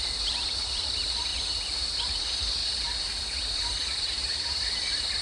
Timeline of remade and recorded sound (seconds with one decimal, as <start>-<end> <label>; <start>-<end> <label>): 0.0-2.6 remade; 2.6-3.5 recorded; 3.5-5.2 remade